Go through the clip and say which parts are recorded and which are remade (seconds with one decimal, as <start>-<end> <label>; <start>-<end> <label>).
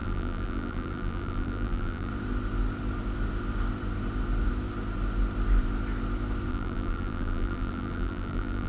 0.0-2.1 remade; 2.1-6.5 recorded; 6.5-8.7 remade